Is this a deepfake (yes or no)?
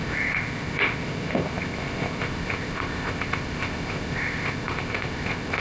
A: yes